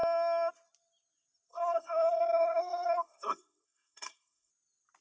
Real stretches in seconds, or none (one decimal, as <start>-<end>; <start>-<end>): 0.0-1.5; 4.5-5.0

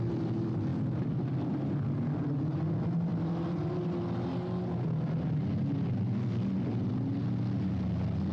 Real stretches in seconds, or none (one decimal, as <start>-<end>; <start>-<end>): 0.0-8.3